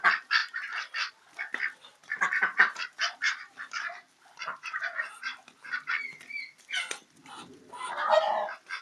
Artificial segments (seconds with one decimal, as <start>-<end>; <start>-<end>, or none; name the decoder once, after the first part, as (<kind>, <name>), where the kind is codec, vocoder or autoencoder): 0.4-1.1 (vocoder, BigVGAN v2); 1.9-5.9; 7.2-7.7